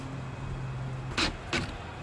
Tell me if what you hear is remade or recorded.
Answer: recorded